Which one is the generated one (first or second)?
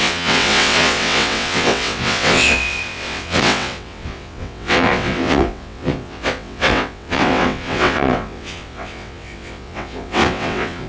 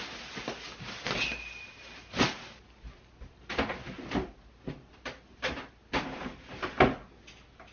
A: first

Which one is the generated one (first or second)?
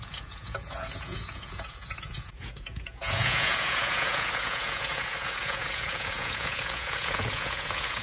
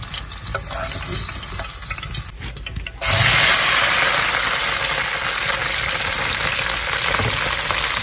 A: first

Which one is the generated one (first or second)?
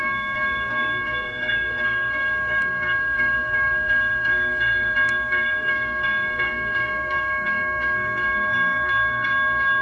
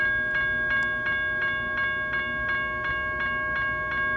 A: first